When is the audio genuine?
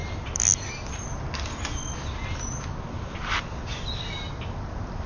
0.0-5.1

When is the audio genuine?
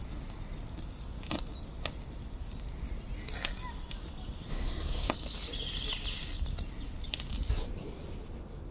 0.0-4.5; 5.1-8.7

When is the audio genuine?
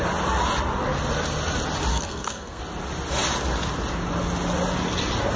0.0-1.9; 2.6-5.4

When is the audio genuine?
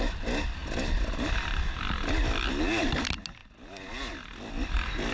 0.0-0.6; 2.5-5.1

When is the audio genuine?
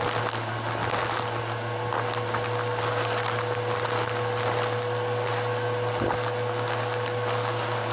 0.0-7.9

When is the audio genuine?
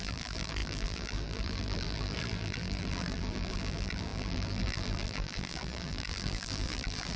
none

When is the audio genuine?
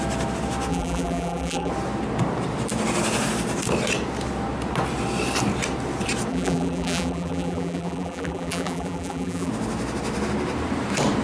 0.0-0.7; 1.7-6.3; 9.5-11.2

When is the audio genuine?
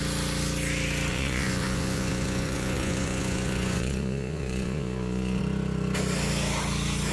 0.0-1.1; 5.4-7.1